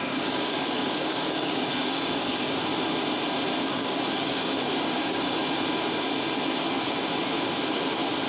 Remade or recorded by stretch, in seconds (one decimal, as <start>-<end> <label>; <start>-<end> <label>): 0.0-2.7 remade; 2.7-3.6 recorded; 3.6-5.4 remade; 5.4-8.3 recorded